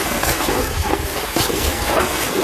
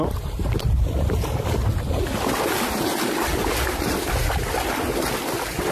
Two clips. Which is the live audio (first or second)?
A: second